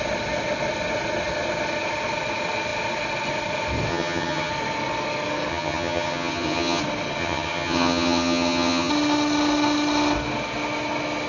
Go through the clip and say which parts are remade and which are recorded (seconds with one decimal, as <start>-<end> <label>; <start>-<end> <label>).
0.0-3.9 recorded; 3.9-4.5 remade; 4.5-5.5 recorded; 5.5-6.8 remade; 6.8-7.2 recorded; 7.2-8.9 remade; 8.9-11.3 recorded

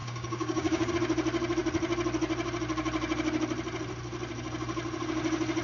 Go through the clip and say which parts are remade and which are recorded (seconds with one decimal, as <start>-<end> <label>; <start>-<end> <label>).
0.0-0.9 remade; 0.9-5.6 recorded

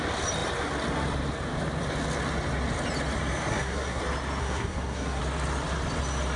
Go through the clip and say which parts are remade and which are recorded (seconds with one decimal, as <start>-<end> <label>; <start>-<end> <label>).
0.0-3.5 recorded; 3.5-4.0 remade; 4.0-4.4 recorded; 4.4-5.2 remade; 5.2-6.4 recorded

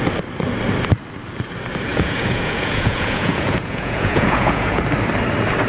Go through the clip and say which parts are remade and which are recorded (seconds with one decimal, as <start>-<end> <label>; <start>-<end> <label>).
0.0-1.9 recorded; 1.9-4.8 remade; 4.8-5.7 recorded